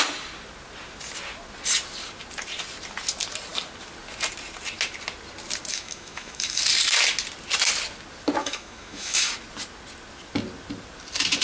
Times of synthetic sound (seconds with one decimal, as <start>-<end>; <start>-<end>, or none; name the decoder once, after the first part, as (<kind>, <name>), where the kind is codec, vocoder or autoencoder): 5.7-6.6 (autoencoder, DAC-VAE); 8.4-9.3